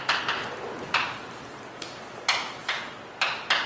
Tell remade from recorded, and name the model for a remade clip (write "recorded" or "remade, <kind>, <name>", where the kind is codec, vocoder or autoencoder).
recorded